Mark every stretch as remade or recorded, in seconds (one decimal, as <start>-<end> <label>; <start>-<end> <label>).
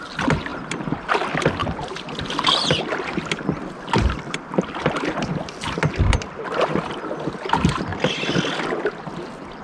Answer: 0.0-5.3 remade; 5.3-5.9 recorded; 5.9-7.9 remade; 7.9-9.0 recorded; 9.0-9.6 remade